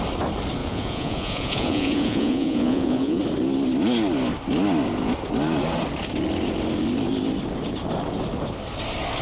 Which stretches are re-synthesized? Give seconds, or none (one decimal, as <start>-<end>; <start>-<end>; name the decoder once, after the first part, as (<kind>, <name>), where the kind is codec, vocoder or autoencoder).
0.6-3.2 (vocoder, Vocos)